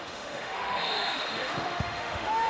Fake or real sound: fake